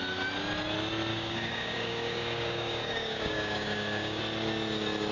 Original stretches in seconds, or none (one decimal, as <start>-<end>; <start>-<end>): 0.0-1.1; 4.2-5.1